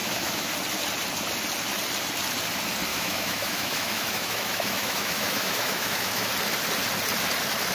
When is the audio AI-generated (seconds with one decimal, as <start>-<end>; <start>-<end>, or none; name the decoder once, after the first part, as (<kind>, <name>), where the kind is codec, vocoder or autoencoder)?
0.0-0.5 (autoencoder, DAC-VAE); 2.9-6.3